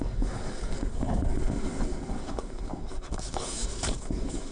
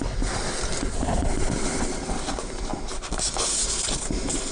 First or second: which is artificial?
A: first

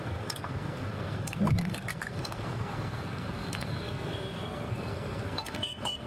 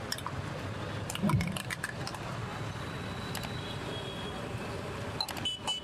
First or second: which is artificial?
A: first